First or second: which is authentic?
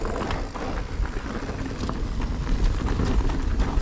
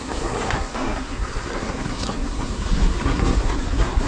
first